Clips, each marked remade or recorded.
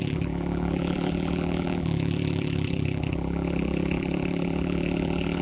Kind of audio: remade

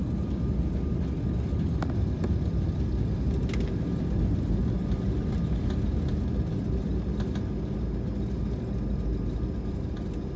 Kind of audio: recorded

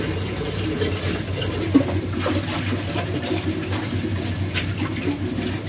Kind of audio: recorded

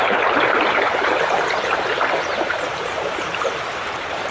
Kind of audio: remade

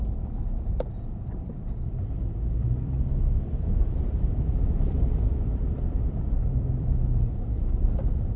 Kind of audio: remade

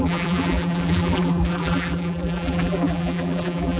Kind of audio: remade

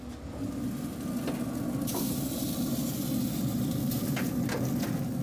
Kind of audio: recorded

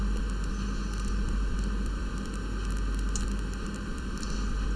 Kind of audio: remade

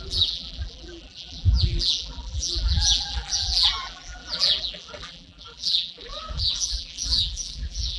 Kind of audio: remade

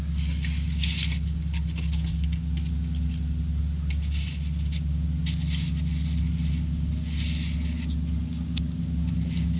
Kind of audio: recorded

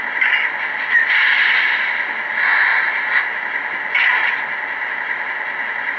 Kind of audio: recorded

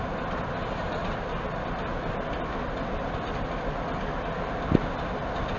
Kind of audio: recorded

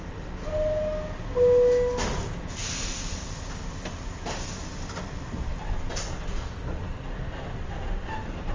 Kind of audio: recorded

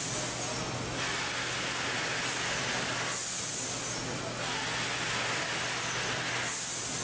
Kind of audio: recorded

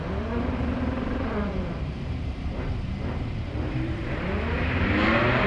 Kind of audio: remade